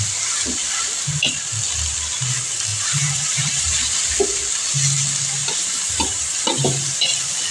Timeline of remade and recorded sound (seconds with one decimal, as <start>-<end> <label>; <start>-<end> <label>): 0.0-2.7 recorded; 2.7-4.0 remade; 4.0-5.4 recorded; 5.4-6.8 remade; 6.8-7.5 recorded